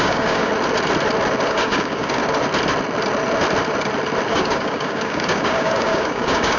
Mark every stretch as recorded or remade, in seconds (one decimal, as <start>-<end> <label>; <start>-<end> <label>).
0.0-0.5 remade; 0.5-1.5 recorded; 1.5-2.2 remade; 2.2-4.3 recorded; 4.3-6.6 remade

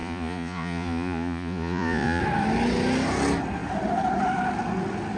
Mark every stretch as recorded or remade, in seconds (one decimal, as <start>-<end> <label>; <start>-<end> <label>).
0.0-2.2 remade; 2.2-5.2 recorded

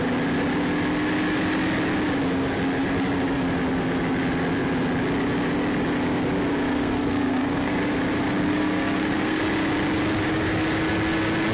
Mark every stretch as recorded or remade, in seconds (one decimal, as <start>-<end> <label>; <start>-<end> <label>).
0.0-6.7 recorded; 6.7-7.7 remade; 7.7-8.4 recorded; 8.4-9.4 remade; 9.4-11.5 recorded

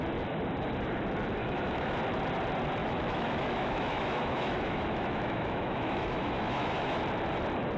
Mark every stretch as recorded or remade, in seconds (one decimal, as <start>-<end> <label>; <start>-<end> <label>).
0.0-1.4 recorded; 1.4-2.0 remade; 2.0-2.8 recorded; 2.8-7.0 remade; 7.0-7.8 recorded